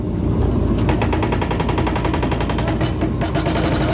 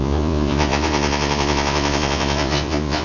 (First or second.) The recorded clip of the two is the first